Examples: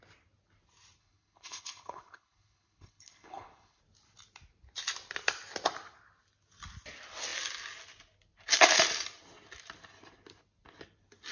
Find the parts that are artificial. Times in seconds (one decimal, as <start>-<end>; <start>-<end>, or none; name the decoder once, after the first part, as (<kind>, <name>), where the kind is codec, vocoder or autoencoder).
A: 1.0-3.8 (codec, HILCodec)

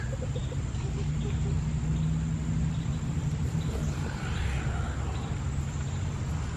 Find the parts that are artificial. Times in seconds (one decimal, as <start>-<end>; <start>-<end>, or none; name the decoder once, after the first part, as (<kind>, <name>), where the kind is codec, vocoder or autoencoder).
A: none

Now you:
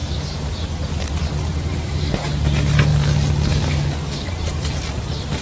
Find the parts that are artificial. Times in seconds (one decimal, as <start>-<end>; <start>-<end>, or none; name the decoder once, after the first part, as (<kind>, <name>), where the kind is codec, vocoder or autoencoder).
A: 0.0-0.5 (codec, DAC); 1.7-2.2; 2.9-4.3

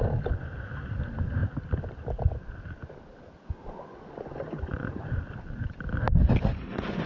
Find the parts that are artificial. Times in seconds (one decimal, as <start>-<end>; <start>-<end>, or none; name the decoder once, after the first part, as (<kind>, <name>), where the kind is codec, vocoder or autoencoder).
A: 3.9-5.0 (vocoder, Vocos); 6.5-7.1

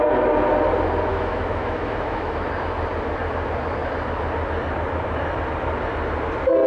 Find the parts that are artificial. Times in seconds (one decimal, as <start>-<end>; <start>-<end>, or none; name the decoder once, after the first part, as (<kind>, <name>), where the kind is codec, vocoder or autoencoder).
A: 1.1-2.5 (autoencoder, DAC-VAE)